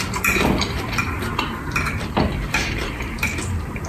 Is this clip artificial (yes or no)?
yes